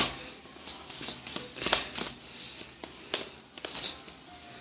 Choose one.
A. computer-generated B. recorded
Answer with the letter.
B